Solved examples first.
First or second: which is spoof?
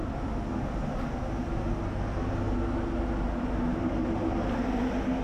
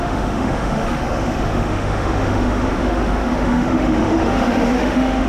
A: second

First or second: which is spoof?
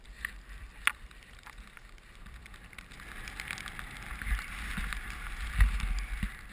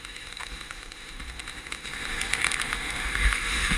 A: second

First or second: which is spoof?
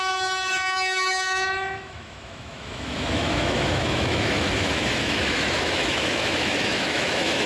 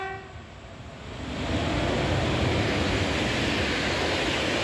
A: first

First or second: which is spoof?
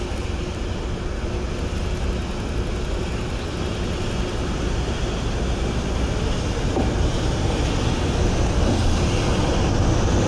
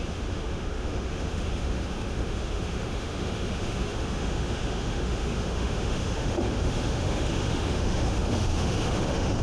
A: second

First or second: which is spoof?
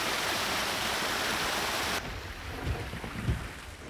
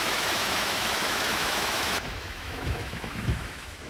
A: second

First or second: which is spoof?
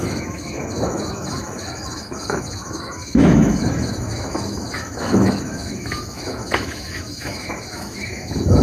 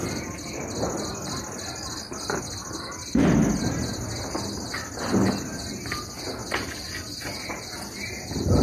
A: first